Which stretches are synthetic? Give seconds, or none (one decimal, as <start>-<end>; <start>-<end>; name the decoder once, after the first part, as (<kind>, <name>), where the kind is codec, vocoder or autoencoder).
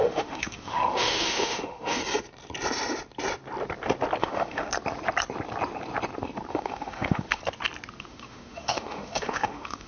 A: 0.0-2.0 (autoencoder, DAC-VAE); 4.2-4.7; 6.5-7.4; 8.0-9.9